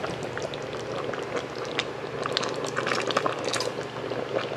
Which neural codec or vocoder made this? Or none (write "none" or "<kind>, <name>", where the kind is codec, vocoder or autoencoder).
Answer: none